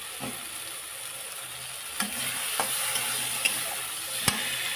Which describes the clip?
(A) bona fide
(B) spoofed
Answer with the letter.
A